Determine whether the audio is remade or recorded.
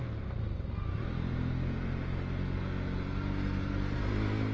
recorded